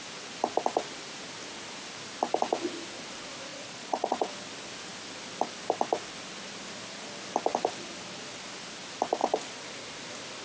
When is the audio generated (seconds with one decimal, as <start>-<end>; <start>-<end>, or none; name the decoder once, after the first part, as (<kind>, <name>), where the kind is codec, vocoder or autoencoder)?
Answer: 3.5-4.3 (vocoder, Vocos); 9.2-9.7